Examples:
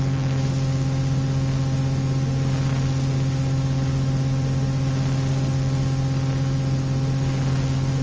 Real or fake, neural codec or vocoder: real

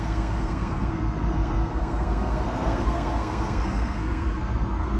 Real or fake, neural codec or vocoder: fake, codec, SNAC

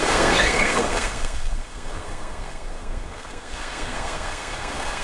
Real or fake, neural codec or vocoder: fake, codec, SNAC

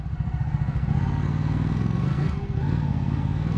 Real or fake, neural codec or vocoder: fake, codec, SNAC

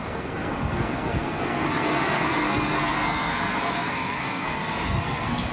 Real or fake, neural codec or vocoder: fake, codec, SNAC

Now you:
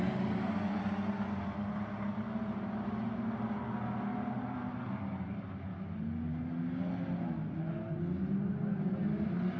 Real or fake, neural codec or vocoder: real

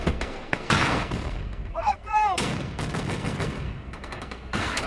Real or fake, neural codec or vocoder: fake, codec, SNAC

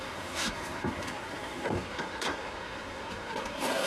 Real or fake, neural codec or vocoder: fake, codec, SNAC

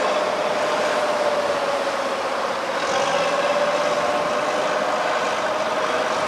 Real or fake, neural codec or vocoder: real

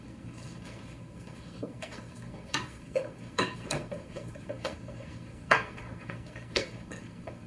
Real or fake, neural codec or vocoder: fake, codec, SNAC